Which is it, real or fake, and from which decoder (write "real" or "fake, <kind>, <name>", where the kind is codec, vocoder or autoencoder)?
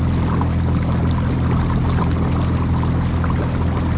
real